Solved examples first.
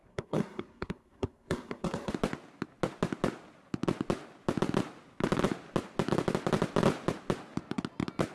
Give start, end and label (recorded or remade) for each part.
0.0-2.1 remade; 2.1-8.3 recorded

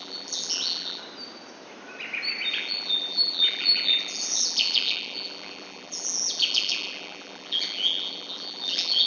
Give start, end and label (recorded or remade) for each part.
0.0-1.0 remade; 1.0-2.5 recorded; 2.5-9.1 remade

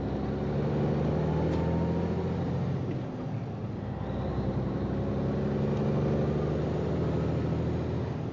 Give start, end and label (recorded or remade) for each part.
0.0-4.3 recorded; 4.3-4.9 remade; 4.9-8.3 recorded

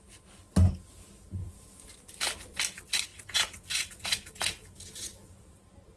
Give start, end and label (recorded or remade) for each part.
0.0-3.1 recorded; 3.1-5.5 remade; 5.5-6.0 recorded

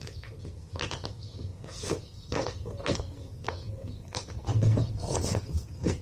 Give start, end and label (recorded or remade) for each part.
0.0-6.0 remade

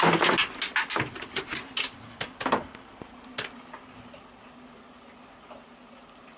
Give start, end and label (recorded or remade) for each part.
0.0-6.4 recorded

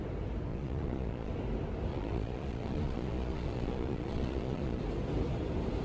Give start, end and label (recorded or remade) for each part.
0.0-0.5 recorded; 0.5-1.3 remade; 1.3-1.9 recorded; 1.9-4.8 remade; 4.8-5.8 recorded